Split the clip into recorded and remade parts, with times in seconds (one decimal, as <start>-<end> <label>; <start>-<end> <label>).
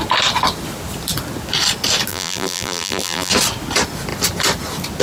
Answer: 0.0-2.1 recorded; 2.1-3.3 remade; 3.3-5.0 recorded